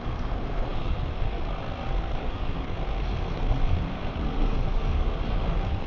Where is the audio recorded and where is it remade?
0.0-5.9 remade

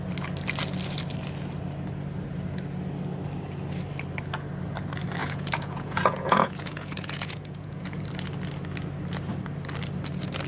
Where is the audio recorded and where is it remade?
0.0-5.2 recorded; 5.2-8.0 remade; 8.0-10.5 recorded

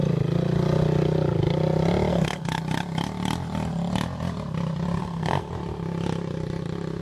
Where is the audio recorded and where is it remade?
0.0-2.1 recorded; 2.1-2.6 remade; 2.6-5.0 recorded; 5.0-5.5 remade; 5.5-7.0 recorded

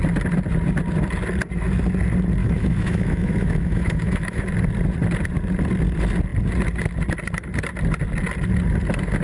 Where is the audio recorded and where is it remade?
0.0-2.4 recorded; 2.4-4.5 remade; 4.5-9.2 recorded

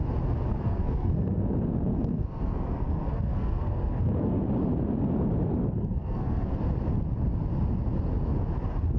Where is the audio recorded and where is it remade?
0.0-0.5 recorded; 0.5-1.5 remade; 1.5-1.9 recorded; 1.9-4.4 remade; 4.4-5.8 recorded; 5.8-6.5 remade; 6.5-9.0 recorded